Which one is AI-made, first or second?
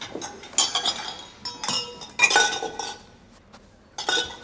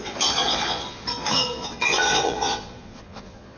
second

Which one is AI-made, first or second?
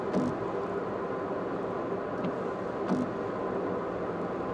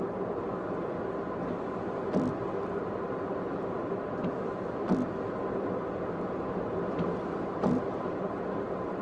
second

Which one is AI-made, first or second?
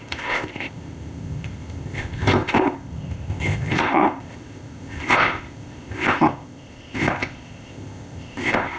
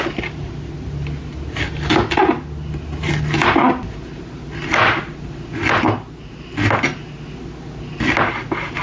first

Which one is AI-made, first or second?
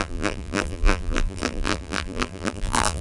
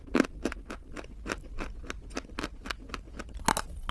first